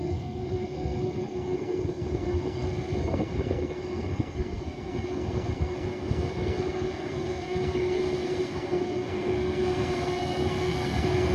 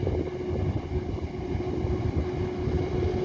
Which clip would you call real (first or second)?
second